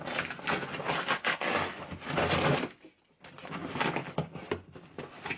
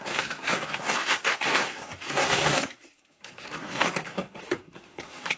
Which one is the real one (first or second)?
first